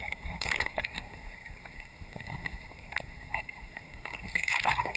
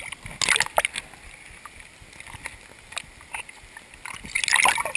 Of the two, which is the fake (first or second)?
first